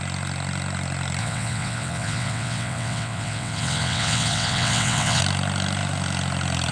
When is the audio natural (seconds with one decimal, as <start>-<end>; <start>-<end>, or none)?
0.0-1.2; 5.2-6.7